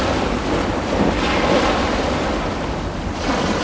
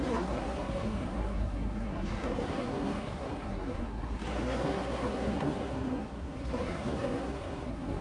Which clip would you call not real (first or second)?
second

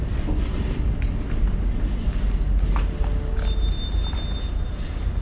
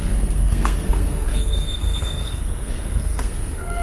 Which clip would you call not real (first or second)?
second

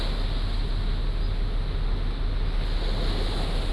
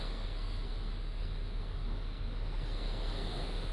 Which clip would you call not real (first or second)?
second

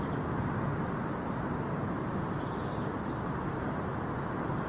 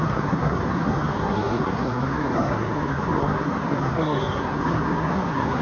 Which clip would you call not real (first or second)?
second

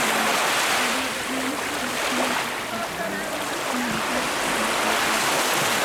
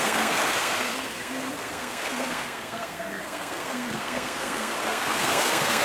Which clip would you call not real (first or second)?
second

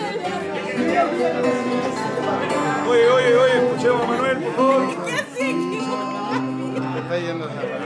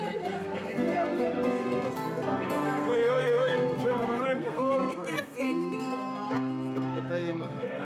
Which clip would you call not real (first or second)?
second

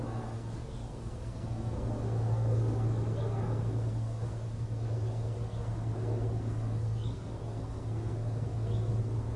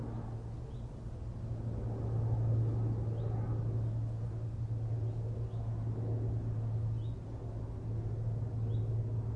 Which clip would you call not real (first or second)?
first